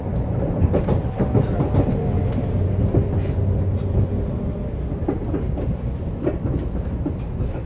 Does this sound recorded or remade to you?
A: recorded